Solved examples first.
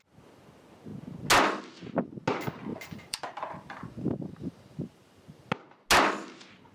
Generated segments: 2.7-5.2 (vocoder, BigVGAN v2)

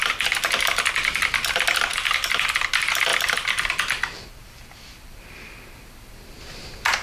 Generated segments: 1.9-2.7 (vocoder, BigVGAN v2); 3.1-5.3

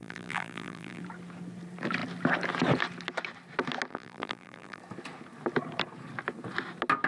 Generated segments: 0.0-1.0 (vocoder, BigVGAN v2); 3.9-4.8